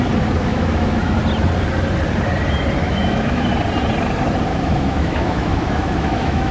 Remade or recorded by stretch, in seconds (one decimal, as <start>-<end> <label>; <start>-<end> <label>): 0.0-0.5 recorded; 0.5-1.1 remade; 1.1-2.8 recorded; 2.8-3.5 remade; 3.5-4.5 recorded; 4.5-6.5 remade